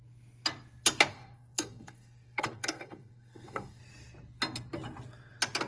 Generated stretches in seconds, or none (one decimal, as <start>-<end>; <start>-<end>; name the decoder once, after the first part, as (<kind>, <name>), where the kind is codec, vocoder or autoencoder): 1.1-3.8 (codec, SNAC)